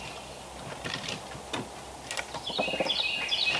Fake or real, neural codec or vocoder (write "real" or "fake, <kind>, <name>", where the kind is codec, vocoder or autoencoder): real